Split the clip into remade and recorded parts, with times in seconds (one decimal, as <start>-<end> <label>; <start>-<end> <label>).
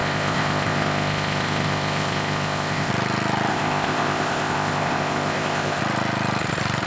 0.0-2.9 remade; 2.9-3.5 recorded; 3.5-5.8 remade; 5.8-6.9 recorded